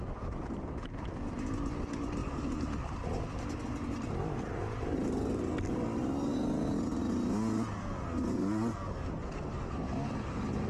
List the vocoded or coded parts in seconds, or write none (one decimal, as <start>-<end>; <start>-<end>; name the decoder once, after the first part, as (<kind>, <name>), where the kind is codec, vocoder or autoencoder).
none